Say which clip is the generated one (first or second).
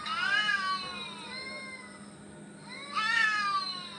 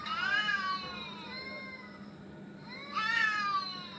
second